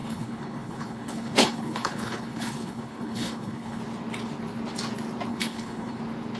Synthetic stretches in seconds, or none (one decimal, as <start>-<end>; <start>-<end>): 0.0-3.8; 5.3-6.0